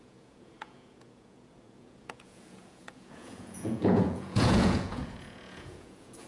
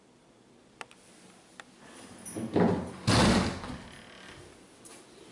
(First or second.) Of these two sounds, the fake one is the first